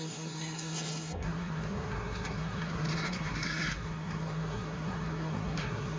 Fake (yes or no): yes